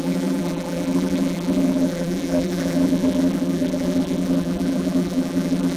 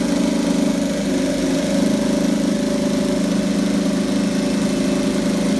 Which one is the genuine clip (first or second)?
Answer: second